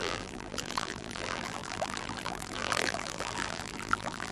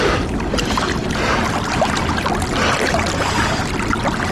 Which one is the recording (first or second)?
second